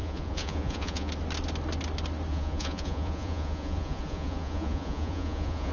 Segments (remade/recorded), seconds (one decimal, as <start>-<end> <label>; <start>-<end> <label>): 0.0-1.1 remade; 1.1-2.3 recorded; 2.3-5.7 remade